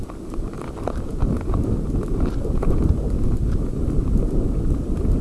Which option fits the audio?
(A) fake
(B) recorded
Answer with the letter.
B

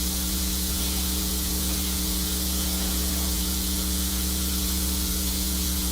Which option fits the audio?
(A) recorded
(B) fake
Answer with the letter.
B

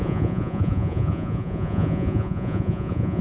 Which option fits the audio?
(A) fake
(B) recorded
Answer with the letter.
A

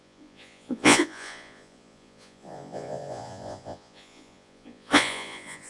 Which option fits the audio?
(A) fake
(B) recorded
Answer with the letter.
A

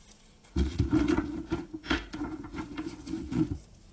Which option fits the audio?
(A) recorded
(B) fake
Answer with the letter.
B